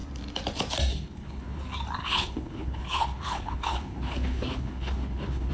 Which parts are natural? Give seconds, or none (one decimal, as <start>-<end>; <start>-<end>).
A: 0.0-0.9; 1.6-2.0